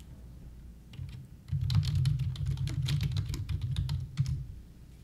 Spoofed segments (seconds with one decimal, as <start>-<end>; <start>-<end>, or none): none